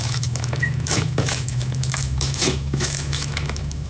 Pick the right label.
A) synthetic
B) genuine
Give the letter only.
A